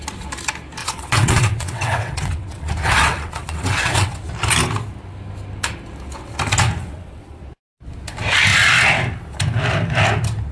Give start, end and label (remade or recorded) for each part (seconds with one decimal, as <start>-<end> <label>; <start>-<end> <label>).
0.0-0.8 recorded; 0.8-4.3 remade; 4.3-6.8 recorded; 6.8-7.4 remade; 7.4-10.5 recorded